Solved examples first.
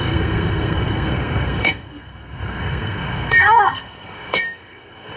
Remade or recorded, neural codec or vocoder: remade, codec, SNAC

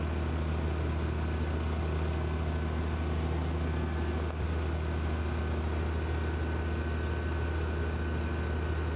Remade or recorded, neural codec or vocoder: recorded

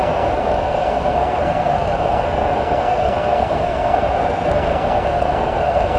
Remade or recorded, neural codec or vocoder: remade, codec, SNAC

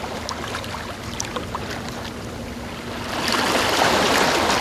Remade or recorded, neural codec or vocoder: recorded